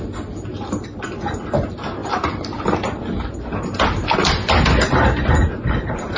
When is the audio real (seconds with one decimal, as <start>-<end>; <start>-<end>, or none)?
0.0-6.2